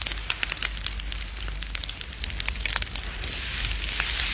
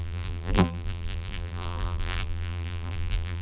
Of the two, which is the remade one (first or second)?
second